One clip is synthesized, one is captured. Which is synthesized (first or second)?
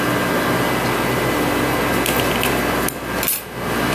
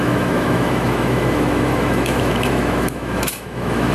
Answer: second